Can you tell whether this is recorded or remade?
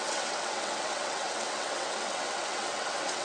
remade